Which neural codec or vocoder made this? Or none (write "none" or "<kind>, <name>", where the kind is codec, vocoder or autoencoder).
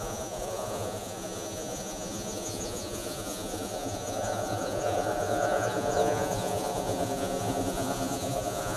vocoder, Vocos